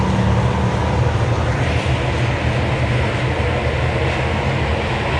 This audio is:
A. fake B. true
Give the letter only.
B